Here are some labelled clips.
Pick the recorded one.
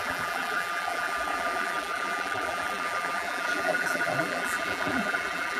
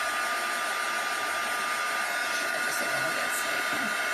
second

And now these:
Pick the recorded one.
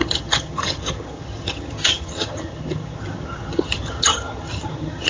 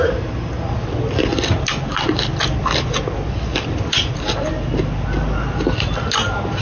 second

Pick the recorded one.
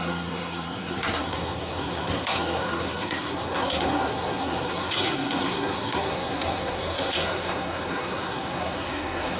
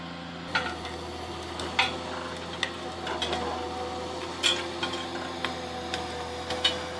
second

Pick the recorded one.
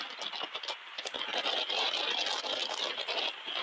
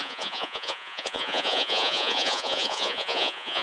first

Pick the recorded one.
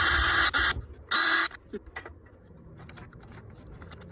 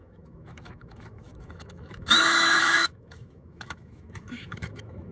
first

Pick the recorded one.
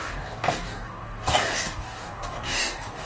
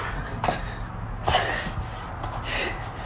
second